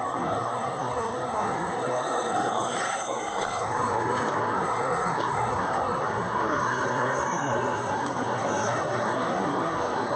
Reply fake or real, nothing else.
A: fake